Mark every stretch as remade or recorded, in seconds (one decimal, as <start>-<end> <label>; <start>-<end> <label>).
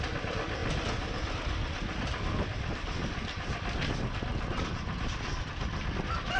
0.0-6.4 recorded